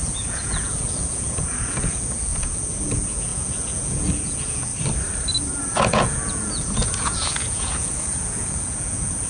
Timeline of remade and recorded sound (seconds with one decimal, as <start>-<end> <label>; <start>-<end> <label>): 0.0-4.7 remade; 4.7-5.6 recorded; 5.6-9.3 remade